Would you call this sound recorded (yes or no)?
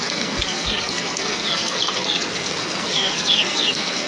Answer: no